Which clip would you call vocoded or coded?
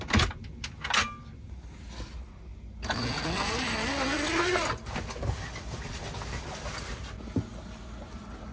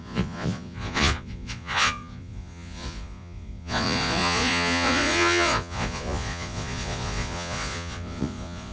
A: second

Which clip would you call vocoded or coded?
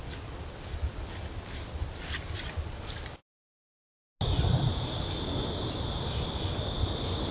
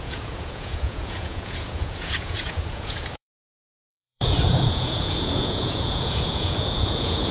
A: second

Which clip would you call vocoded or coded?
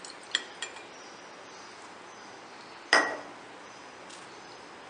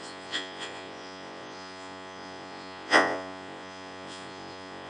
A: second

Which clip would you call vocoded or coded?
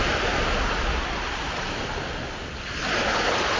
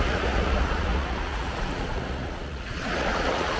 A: second